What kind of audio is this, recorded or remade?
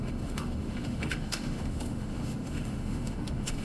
remade